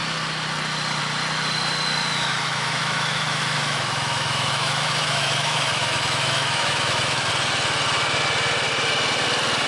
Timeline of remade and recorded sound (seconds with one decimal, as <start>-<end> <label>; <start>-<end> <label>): 0.0-2.1 recorded; 2.1-7.3 remade; 7.3-9.7 recorded